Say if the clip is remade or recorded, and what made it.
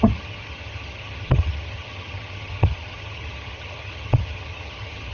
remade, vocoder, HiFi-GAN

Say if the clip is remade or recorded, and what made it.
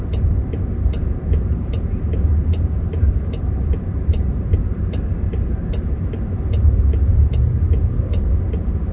recorded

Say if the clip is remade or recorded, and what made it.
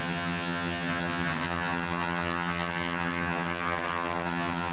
remade, vocoder, HiFi-GAN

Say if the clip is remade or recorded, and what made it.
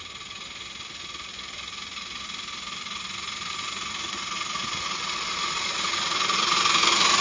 recorded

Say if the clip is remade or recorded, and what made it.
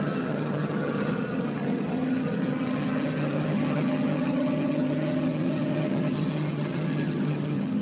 remade, vocoder, HiFi-GAN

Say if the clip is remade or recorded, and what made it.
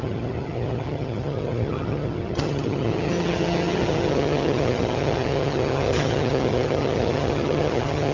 remade, vocoder, HiFi-GAN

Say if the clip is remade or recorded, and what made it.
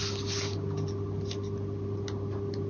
recorded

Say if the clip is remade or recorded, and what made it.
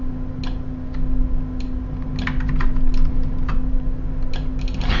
recorded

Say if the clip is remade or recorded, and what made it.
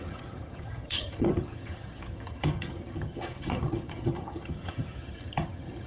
remade, vocoder, HiFi-GAN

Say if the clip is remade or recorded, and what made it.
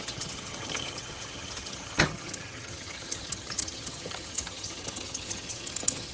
remade, vocoder, HiFi-GAN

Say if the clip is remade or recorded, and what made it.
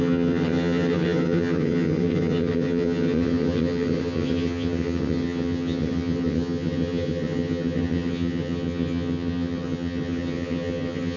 remade, vocoder, HiFi-GAN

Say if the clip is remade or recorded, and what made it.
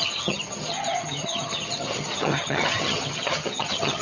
remade, vocoder, HiFi-GAN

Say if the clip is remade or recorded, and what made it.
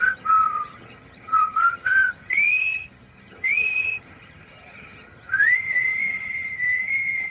remade, vocoder, HiFi-GAN